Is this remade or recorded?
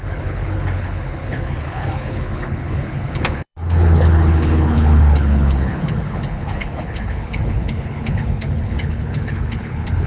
remade